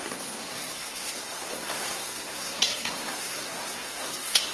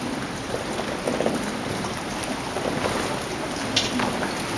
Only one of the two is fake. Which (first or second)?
first